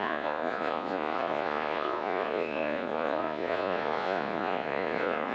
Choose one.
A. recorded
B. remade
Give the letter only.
B